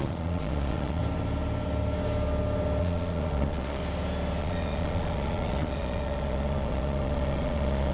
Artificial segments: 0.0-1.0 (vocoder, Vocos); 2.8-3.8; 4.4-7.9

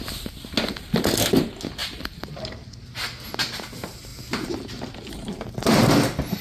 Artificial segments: none

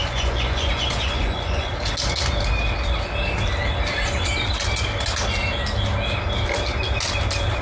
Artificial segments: 0.0-1.7 (vocoder, Vocos)

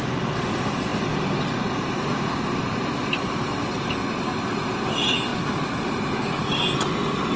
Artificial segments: none

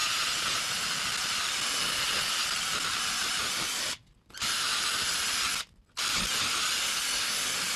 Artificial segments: none

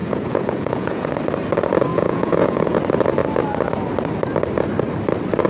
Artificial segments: 0.0-1.1 (vocoder, Vocos); 1.9-2.8

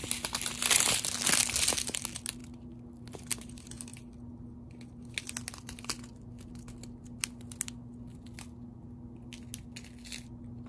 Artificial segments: none

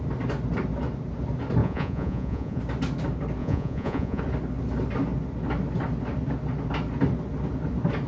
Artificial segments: 1.6-2.6 (vocoder, Vocos); 3.4-4.2